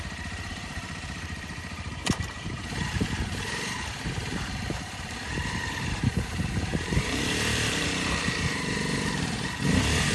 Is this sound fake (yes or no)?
yes